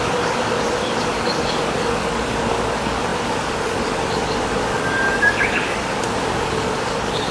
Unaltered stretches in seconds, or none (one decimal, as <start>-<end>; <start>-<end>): none